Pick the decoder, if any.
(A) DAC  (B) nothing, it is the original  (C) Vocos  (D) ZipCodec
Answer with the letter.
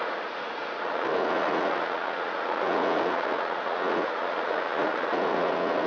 C